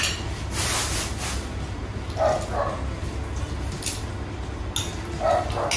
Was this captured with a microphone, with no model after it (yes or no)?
yes